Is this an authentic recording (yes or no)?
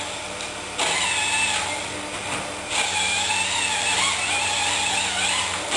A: no